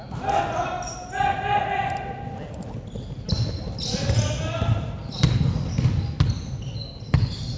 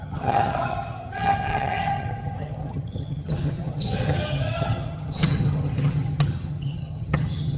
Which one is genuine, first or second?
first